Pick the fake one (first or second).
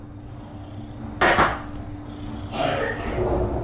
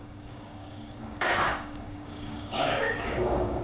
second